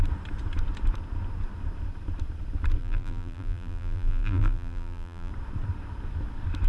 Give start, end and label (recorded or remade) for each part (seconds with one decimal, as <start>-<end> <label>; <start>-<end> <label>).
0.0-2.8 recorded; 2.8-5.3 remade; 5.3-6.7 recorded